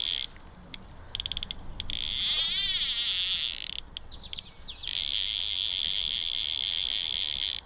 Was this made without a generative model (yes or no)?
yes